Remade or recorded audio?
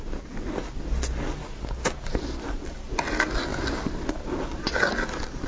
recorded